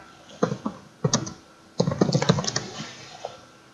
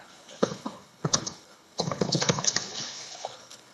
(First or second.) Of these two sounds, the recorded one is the first